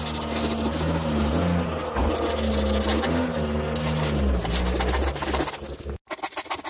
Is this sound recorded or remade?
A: recorded